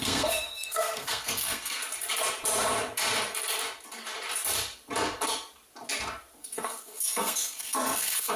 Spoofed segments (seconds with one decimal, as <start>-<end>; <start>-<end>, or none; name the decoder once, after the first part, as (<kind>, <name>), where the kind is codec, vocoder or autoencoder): 0.0-1.8 (codec, SNAC); 6.4-8.4